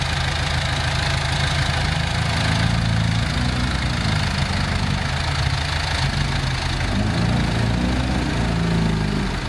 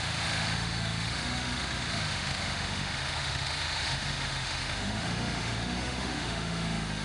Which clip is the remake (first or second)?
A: second